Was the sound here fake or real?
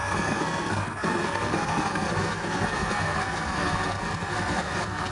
fake